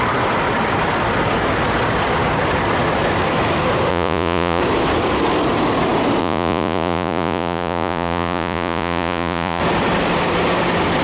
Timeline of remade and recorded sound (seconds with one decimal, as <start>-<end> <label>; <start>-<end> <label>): 0.0-3.9 recorded; 3.9-4.6 remade; 4.6-6.2 recorded; 6.2-9.6 remade; 9.6-11.0 recorded